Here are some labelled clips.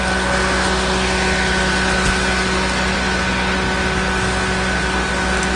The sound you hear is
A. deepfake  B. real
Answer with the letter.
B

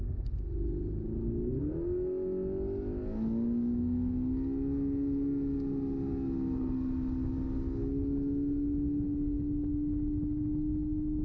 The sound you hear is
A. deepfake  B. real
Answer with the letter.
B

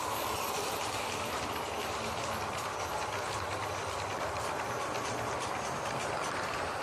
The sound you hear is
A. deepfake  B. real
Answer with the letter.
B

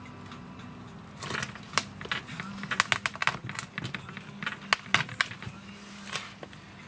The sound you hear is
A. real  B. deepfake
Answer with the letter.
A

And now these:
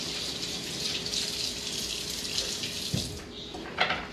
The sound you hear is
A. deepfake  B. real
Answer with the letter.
B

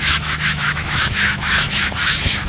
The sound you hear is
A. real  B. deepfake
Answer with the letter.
B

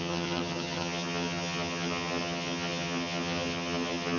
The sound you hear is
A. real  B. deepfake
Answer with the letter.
B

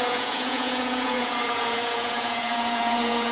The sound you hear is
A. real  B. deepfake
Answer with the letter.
B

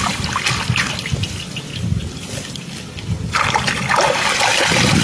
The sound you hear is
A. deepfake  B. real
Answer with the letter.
B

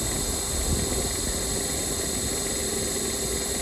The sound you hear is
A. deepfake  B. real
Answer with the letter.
B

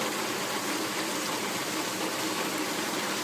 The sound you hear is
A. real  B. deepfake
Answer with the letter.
B